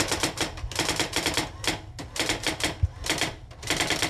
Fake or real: real